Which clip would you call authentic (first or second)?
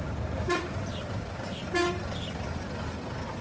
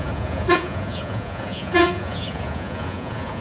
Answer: first